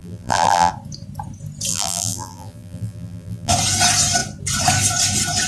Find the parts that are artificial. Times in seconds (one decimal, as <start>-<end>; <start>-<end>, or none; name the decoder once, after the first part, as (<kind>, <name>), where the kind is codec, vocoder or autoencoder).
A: 0.0-0.7 (vocoder, BigVGAN v2); 1.7-3.5